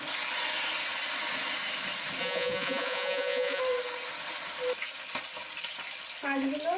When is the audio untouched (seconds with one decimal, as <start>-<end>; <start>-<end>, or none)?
0.0-2.2; 3.6-6.8